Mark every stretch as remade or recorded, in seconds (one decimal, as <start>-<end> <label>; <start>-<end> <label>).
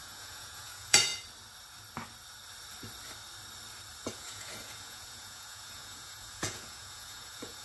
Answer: 0.0-1.1 remade; 1.1-4.1 recorded; 4.1-7.6 remade